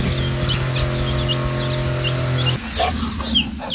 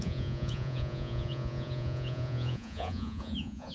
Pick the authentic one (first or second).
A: first